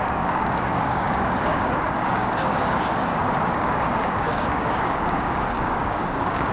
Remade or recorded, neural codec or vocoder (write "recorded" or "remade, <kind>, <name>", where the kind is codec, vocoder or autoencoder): remade, codec, DAC